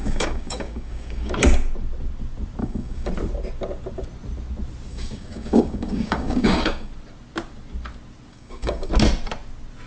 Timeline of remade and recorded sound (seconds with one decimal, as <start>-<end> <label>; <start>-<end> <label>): 0.0-1.3 remade; 1.3-2.6 recorded; 2.6-3.1 remade; 3.1-4.9 recorded; 4.9-6.9 remade; 6.9-8.3 recorded; 8.3-8.9 remade; 8.9-9.9 recorded